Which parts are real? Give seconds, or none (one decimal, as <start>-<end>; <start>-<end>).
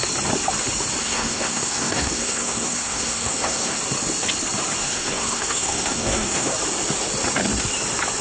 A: 0.0-1.0; 3.8-4.8; 6.5-8.2